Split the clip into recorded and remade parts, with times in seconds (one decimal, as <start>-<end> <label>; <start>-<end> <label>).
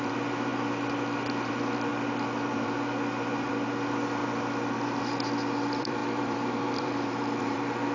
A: 0.0-0.5 remade; 0.5-1.5 recorded; 1.5-4.2 remade; 4.2-5.0 recorded; 5.0-7.9 remade